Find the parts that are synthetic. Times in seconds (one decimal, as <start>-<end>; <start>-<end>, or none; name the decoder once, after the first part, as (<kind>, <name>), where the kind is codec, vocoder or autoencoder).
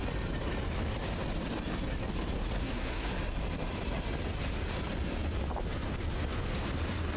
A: 2.6-3.1 (codec, SNAC)